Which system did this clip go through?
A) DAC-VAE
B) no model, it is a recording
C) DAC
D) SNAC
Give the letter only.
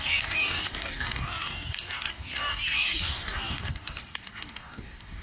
C